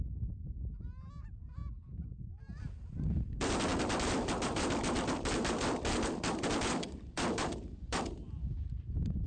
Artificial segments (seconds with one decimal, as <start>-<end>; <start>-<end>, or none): 0.0-0.4; 1.7-9.3